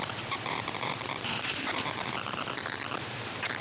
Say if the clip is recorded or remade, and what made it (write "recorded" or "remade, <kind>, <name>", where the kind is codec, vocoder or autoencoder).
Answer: remade, vocoder, BigVGAN v2